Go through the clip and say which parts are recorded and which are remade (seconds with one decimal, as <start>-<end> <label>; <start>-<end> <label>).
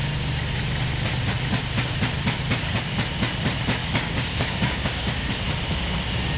0.0-3.8 recorded; 3.8-5.3 remade; 5.3-6.4 recorded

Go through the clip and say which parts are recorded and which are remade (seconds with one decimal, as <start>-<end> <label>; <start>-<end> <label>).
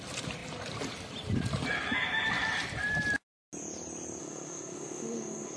0.0-4.2 recorded; 4.2-5.6 remade